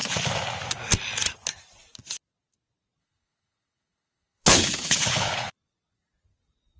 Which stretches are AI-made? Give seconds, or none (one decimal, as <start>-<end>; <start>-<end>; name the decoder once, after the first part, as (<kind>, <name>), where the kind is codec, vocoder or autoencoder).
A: 3.0-5.5 (codec, HILCodec)